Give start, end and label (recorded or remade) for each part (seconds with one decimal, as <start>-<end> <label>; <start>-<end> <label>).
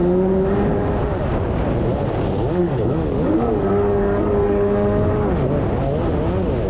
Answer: 0.0-2.6 recorded; 2.6-5.1 remade; 5.1-6.7 recorded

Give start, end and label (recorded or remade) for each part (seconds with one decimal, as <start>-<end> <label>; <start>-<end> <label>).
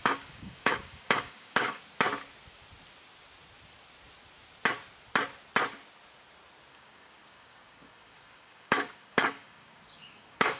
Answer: 0.0-1.8 remade; 1.8-6.7 recorded; 6.7-10.6 remade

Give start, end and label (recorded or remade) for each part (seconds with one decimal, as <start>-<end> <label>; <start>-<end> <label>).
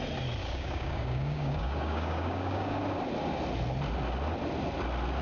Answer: 0.0-0.4 recorded; 0.4-2.8 remade; 2.8-5.2 recorded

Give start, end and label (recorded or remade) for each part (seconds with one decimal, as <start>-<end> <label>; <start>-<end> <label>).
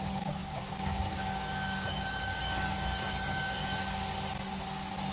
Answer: 0.0-3.8 remade; 3.8-5.1 recorded